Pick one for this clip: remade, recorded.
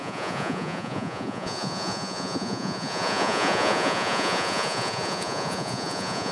remade